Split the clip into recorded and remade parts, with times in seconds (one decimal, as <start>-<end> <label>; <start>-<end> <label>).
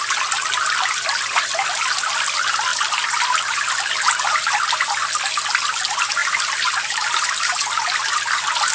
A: 0.0-2.7 recorded; 2.7-3.6 remade; 3.6-8.7 recorded